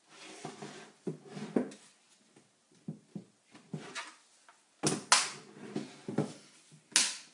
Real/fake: real